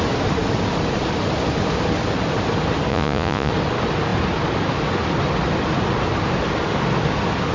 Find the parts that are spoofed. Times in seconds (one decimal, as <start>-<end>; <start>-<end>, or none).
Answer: 2.9-3.5